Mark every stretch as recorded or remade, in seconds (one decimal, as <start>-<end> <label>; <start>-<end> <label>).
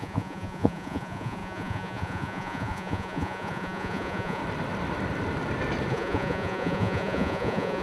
0.0-4.4 remade; 4.4-5.9 recorded; 5.9-7.8 remade